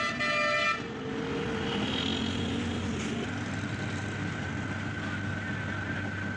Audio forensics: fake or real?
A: real